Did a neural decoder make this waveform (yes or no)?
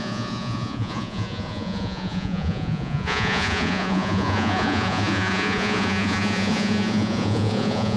yes